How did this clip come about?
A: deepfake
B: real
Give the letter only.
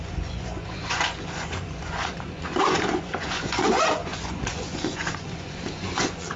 A